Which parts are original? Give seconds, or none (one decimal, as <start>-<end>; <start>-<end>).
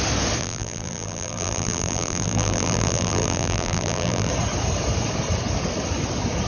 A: 0.0-0.4; 4.3-6.5